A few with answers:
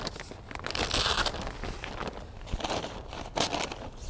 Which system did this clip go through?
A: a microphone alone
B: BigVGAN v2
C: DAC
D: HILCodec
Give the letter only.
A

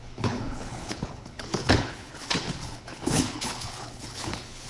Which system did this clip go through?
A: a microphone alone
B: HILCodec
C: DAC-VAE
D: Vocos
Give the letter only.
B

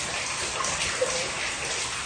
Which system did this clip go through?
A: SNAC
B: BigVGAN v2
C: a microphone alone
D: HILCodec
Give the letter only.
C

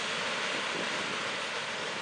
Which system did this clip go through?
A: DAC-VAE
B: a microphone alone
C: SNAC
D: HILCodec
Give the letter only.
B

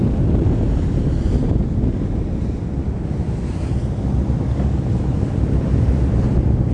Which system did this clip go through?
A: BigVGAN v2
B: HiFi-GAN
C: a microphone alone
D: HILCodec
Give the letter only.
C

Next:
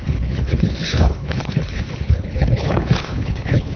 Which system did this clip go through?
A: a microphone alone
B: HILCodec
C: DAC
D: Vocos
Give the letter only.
B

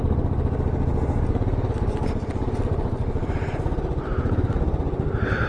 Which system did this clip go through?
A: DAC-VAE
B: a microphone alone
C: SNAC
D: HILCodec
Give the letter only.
B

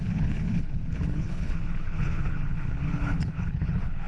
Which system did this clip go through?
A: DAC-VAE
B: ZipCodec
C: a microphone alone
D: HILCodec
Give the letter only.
D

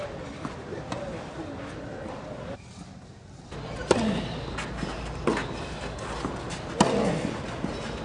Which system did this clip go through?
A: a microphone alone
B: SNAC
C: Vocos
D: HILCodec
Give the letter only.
A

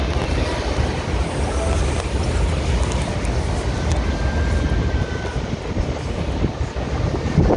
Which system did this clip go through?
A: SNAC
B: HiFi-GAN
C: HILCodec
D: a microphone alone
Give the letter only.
D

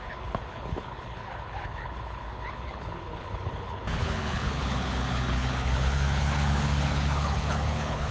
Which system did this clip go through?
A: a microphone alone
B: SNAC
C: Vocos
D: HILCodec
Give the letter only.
D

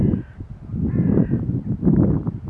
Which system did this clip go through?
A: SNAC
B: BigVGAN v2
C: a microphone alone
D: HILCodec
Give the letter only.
C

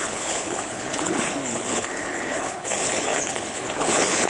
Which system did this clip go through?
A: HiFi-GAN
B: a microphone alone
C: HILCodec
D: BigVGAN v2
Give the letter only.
C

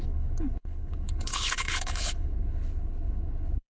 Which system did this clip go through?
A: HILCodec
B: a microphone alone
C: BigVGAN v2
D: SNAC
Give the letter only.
A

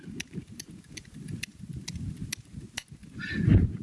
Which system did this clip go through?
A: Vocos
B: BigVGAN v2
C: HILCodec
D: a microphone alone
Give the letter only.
D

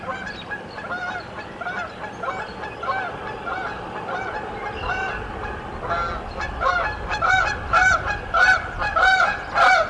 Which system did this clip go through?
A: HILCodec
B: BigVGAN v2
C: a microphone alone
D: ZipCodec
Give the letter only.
C